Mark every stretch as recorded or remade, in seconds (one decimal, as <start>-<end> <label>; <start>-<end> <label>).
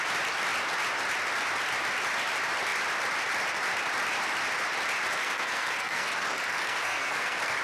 0.0-5.2 recorded; 5.2-7.6 remade